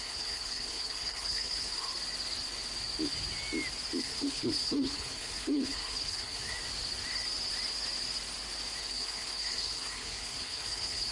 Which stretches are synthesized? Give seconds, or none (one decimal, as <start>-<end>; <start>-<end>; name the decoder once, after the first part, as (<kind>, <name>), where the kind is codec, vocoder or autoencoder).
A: 0.0-1.9 (codec, HILCodec); 4.0-6.6; 8.8-11.1